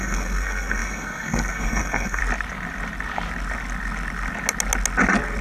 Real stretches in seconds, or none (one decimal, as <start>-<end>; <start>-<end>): 2.2-5.4